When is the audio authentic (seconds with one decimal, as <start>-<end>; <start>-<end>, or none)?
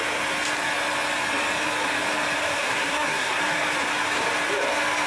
0.0-2.4; 3.4-5.1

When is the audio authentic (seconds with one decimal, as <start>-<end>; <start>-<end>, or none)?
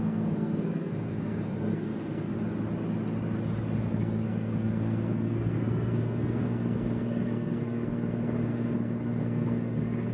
2.3-3.9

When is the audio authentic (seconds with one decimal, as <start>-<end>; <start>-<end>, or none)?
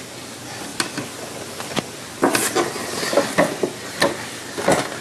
0.0-5.0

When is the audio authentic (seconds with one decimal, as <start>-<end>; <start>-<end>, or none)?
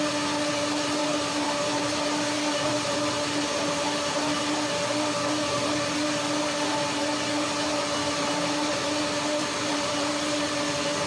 0.0-1.0; 4.4-9.4; 10.6-11.1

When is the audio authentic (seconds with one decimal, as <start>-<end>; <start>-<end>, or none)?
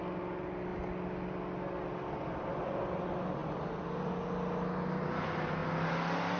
0.0-3.4; 4.1-6.4